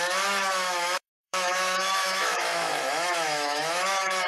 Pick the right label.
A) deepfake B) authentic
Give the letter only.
A